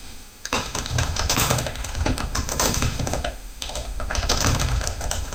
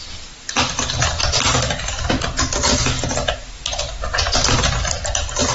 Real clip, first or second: second